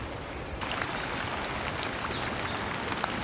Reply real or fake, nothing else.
real